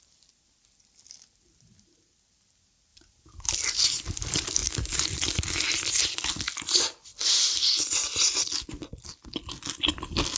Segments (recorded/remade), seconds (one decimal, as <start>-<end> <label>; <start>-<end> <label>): 0.0-2.9 recorded; 2.9-3.5 remade; 3.5-4.6 recorded; 4.6-5.4 remade; 5.4-10.4 recorded